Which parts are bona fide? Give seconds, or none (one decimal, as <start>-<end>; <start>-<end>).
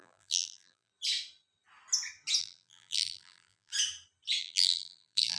0.9-2.4; 3.7-4.4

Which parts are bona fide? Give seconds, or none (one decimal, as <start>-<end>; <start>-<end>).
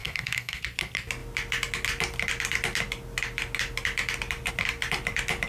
0.6-5.5